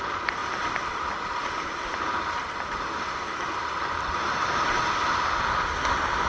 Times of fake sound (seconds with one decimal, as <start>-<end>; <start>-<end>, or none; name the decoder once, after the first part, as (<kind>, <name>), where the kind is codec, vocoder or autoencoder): none